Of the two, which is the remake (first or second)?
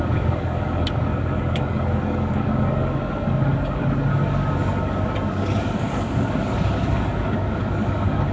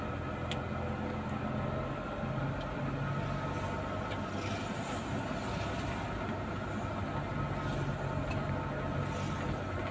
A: first